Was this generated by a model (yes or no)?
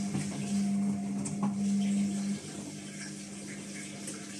no